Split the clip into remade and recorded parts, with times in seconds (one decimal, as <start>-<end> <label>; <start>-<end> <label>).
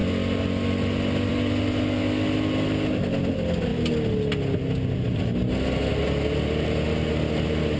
0.0-7.8 recorded